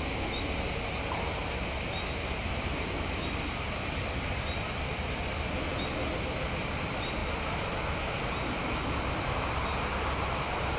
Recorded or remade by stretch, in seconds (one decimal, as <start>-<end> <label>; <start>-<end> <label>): 0.0-10.8 recorded